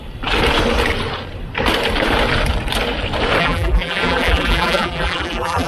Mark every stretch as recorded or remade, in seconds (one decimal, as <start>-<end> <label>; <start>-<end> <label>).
0.0-3.4 recorded; 3.4-5.7 remade